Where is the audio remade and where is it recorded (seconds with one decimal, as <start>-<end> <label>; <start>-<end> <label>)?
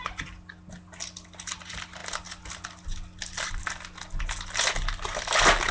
0.0-5.7 recorded